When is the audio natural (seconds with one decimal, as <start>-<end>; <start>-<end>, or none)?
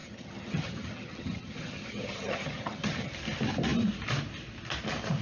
3.1-5.2